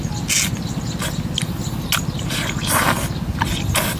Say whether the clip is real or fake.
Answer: real